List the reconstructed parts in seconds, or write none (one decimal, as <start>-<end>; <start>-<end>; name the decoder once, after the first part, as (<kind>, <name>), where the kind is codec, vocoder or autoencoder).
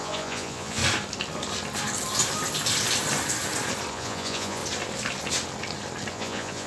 0.0-0.8 (vocoder, Vocos); 3.9-4.6; 6.1-6.7